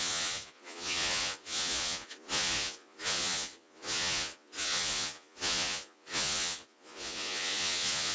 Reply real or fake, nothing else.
fake